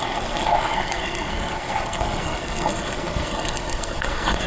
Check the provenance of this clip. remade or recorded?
remade